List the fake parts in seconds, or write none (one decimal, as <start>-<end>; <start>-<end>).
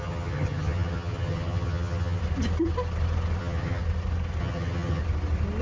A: 0.0-2.2; 3.4-3.8; 4.4-5.0